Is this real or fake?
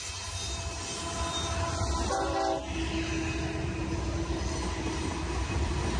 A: real